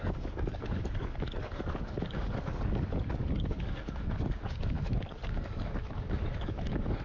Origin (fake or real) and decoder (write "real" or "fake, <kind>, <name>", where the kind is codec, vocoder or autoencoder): fake, codec, DAC